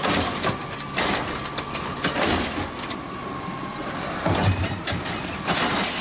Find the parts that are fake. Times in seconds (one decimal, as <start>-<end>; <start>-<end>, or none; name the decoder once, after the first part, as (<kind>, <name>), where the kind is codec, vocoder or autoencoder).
4.4-6.0 (vocoder, BigVGAN v2)

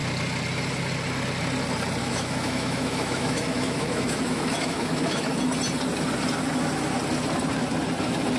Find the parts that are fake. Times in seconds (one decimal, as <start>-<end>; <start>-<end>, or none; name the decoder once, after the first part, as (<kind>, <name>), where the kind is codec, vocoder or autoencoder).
2.0-5.3 (autoencoder, DAC-VAE)

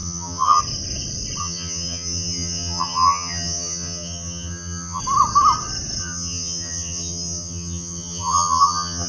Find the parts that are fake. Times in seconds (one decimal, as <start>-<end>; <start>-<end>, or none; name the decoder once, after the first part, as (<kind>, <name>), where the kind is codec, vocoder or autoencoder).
0.0-0.6 (vocoder, HiFi-GAN); 1.4-5.0; 6.0-9.1

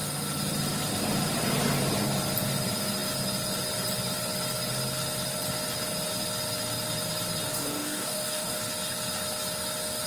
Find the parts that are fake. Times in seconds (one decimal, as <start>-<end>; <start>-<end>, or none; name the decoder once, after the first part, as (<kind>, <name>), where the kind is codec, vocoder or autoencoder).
7.5-8.6 (codec, DAC)

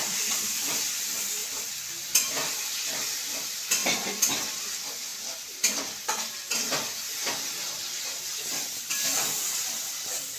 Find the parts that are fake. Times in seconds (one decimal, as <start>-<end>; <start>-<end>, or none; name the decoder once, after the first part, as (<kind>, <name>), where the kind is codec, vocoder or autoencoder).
0.0-1.4 (vocoder, BigVGAN v2); 3.4-10.4

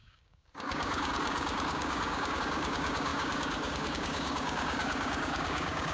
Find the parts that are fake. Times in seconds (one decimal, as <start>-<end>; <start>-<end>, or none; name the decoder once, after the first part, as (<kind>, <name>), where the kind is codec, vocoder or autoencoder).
0.0-5.9 (codec, DAC)